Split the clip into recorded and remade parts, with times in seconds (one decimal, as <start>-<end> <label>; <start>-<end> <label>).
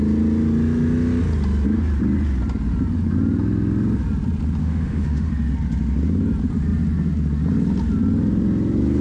0.0-4.6 recorded; 4.6-5.3 remade; 5.3-9.0 recorded